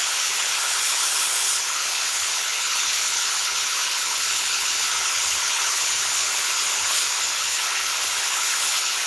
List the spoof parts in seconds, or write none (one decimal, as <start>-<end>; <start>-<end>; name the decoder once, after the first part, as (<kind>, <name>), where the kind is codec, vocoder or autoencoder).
0.0-9.1 (codec, HILCodec)